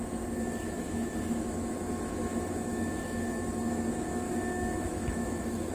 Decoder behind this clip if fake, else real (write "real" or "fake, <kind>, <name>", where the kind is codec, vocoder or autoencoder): fake, autoencoder, DAC-VAE